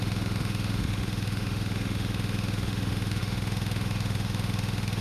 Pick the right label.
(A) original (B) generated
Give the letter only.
B